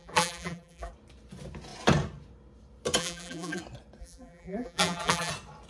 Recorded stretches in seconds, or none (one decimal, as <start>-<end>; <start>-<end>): 0.9-3.0; 3.6-4.0; 5.3-5.7